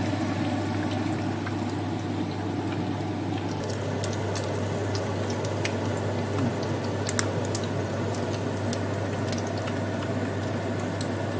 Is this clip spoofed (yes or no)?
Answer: no